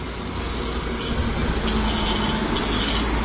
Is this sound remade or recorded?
recorded